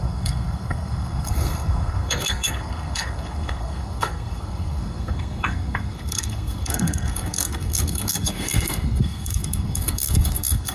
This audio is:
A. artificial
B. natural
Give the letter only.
A